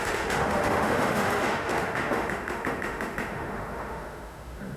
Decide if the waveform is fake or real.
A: fake